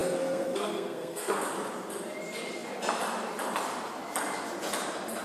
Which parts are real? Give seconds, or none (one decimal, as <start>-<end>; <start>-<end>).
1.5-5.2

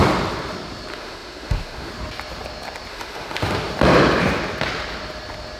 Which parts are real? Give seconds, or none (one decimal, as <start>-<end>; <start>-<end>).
0.0-0.9; 1.9-2.9; 3.7-5.6

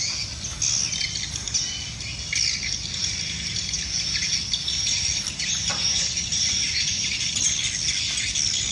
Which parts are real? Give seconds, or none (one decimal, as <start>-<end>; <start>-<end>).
0.0-5.7; 7.4-8.7